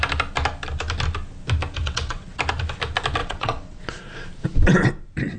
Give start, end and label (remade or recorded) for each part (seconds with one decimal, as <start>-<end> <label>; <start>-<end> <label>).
0.0-1.8 recorded; 1.8-2.4 remade; 2.4-3.2 recorded; 3.2-3.8 remade; 3.8-5.4 recorded